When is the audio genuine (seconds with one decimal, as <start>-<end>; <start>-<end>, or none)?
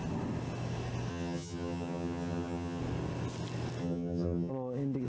0.0-1.1; 2.8-3.8; 4.5-5.1